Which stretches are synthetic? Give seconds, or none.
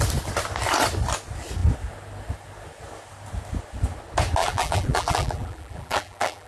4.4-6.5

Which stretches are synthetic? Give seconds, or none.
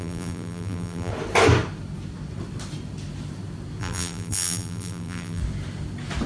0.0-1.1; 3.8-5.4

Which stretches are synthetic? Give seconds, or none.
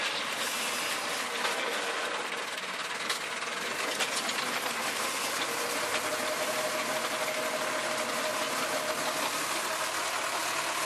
8.3-8.9